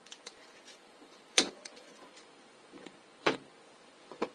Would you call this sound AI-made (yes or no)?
yes